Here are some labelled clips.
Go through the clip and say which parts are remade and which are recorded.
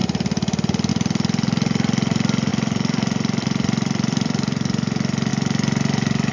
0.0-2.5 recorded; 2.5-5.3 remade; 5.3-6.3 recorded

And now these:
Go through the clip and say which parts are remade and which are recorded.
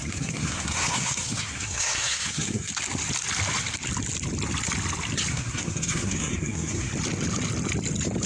0.0-2.7 remade; 2.7-5.3 recorded; 5.3-6.9 remade; 6.9-8.3 recorded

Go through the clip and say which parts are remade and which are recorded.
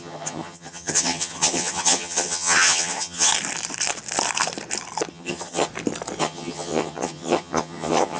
0.0-3.3 remade; 3.3-5.1 recorded; 5.1-5.7 remade; 5.7-6.2 recorded; 6.2-8.2 remade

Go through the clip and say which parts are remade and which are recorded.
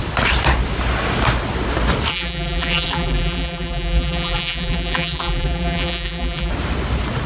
0.0-2.1 recorded; 2.1-6.5 remade; 6.5-7.3 recorded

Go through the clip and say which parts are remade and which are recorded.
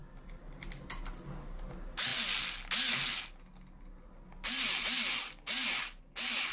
0.0-6.5 recorded